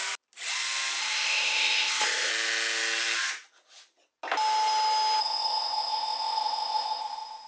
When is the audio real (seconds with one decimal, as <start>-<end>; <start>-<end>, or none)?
0.0-1.0; 2.3-5.2